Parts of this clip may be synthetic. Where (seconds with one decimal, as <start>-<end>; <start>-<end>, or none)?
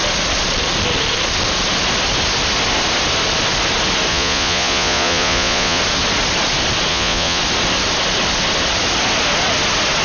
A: 4.1-5.8; 6.9-7.4